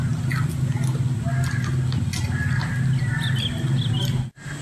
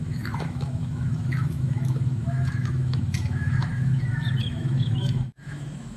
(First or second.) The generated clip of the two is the second